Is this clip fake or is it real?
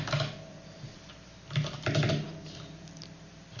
real